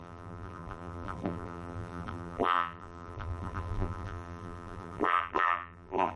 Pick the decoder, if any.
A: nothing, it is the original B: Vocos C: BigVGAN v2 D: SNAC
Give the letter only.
C